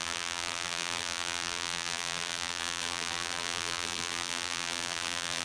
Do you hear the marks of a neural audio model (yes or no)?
yes